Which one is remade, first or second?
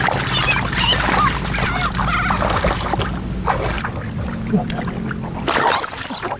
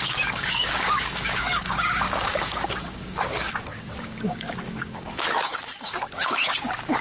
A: second